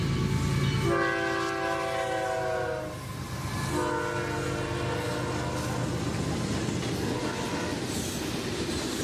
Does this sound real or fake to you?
real